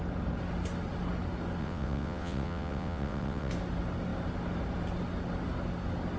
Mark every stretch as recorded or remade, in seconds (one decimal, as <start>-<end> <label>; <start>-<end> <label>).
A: 0.0-1.6 recorded; 1.6-3.5 remade; 3.5-6.2 recorded